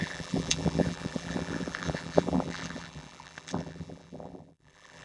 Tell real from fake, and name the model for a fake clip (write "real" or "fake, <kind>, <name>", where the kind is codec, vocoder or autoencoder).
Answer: fake, vocoder, BigVGAN v2